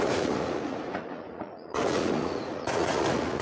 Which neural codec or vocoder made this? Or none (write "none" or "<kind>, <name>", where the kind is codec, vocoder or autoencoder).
vocoder, Vocos